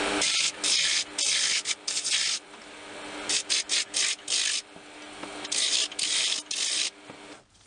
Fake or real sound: real